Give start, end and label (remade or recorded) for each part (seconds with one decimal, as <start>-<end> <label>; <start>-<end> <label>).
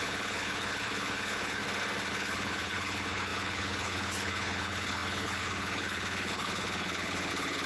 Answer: 0.0-1.6 remade; 1.6-2.1 recorded; 2.1-7.7 remade